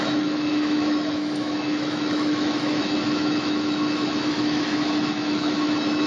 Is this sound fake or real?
fake